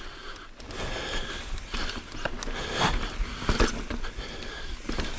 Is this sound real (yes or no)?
yes